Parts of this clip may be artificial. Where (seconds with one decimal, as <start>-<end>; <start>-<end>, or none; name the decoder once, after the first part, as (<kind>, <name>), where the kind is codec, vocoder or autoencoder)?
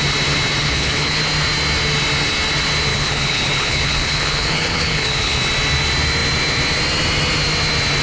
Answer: 0.6-1.2 (codec, HILCodec); 2.9-5.4